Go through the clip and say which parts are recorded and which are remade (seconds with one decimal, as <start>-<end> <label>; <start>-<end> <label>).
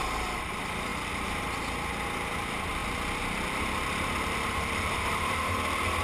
0.0-0.9 recorded; 0.9-1.4 remade; 1.4-2.8 recorded; 2.8-5.4 remade; 5.4-6.0 recorded